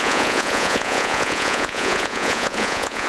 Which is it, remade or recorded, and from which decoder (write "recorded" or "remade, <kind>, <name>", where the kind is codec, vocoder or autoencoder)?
remade, vocoder, Vocos